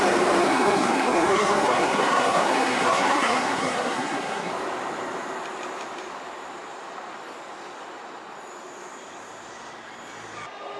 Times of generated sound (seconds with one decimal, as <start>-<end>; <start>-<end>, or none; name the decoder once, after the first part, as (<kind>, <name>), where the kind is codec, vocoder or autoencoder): 0.4-4.5 (codec, SNAC)